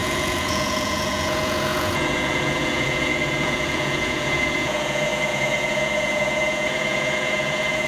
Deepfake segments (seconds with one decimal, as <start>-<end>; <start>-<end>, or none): 0.0-7.9